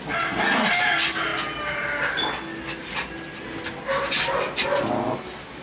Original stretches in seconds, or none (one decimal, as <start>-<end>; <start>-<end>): 0.0-5.6